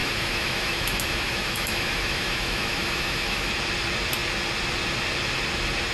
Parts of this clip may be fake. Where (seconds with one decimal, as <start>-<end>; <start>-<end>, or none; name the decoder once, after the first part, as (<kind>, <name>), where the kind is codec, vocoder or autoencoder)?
0.0-3.5 (autoencoder, DAC-VAE)